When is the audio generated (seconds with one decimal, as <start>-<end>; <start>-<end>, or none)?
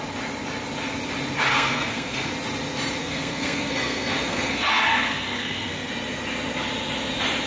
1.5-2.3; 3.0-5.9